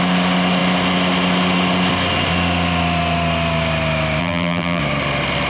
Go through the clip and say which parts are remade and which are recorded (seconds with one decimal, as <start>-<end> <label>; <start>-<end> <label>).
0.0-4.2 recorded; 4.2-4.8 remade; 4.8-5.5 recorded